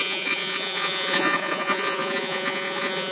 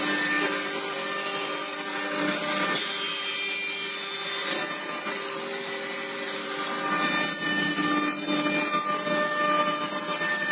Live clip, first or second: second